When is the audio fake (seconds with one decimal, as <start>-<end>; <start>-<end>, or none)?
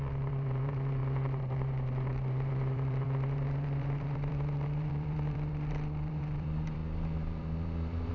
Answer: 0.0-8.1